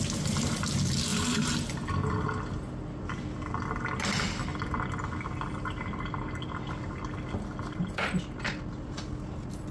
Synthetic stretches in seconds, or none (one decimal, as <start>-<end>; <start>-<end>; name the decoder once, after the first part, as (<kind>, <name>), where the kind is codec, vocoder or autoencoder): none

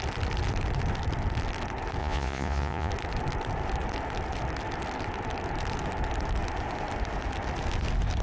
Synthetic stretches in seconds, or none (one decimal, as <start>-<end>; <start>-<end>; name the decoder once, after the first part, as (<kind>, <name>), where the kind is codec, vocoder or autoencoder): 2.0-2.9 (vocoder, Vocos)

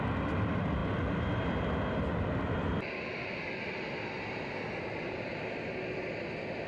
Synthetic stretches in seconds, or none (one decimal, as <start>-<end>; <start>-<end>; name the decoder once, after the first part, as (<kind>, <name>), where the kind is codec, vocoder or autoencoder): none